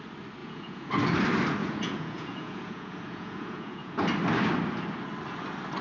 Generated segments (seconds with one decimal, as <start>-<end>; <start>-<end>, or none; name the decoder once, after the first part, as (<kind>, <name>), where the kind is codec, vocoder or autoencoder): 0.4-0.9 (vocoder, Vocos); 1.6-4.0